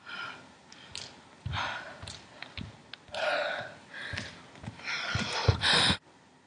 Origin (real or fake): real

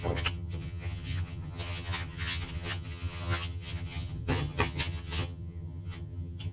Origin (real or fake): fake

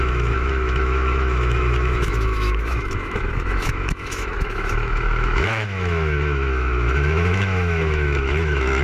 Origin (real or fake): fake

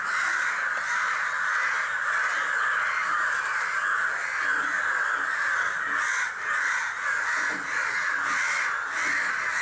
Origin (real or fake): real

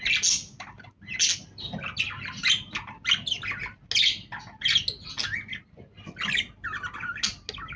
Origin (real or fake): real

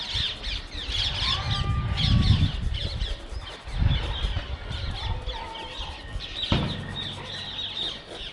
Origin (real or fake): real